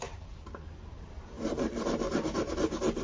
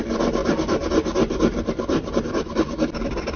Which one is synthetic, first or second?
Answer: first